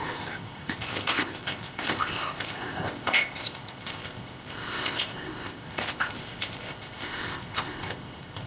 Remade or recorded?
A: remade